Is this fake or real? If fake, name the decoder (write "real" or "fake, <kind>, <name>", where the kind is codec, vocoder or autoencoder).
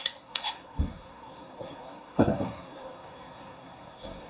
fake, codec, SNAC